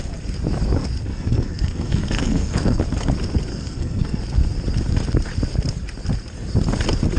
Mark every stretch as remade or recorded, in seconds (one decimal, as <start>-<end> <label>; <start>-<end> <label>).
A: 0.0-1.1 recorded; 1.1-2.8 remade; 2.8-3.5 recorded; 3.5-4.2 remade; 4.2-7.2 recorded